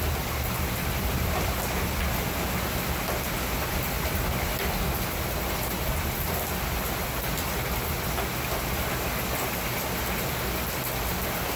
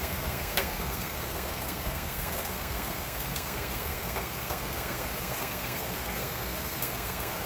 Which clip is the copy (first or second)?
second